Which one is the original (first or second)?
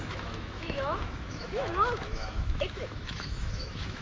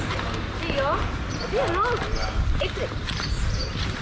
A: second